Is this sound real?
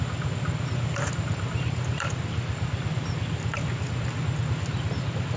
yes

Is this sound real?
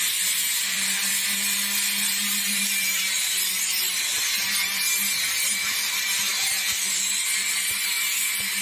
no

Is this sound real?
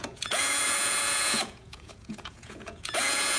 no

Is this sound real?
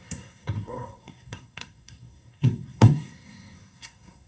no